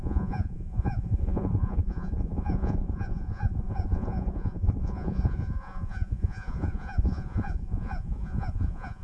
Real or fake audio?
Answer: fake